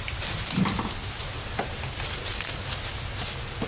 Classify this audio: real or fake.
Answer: real